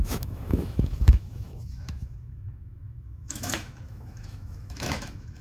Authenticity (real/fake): fake